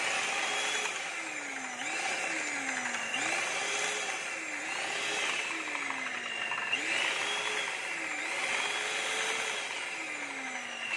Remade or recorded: recorded